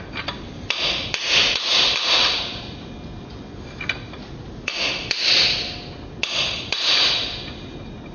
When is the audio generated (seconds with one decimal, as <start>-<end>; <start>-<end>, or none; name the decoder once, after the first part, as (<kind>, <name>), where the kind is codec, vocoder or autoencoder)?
1.4-2.9 (vocoder, Vocos); 4.0-4.9